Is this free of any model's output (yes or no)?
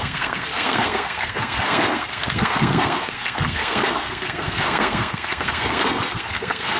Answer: no